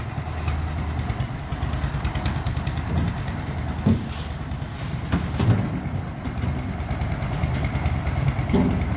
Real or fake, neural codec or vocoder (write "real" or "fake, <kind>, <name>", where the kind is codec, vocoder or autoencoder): real